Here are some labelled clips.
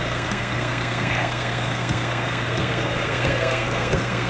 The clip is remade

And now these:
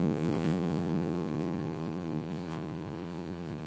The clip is remade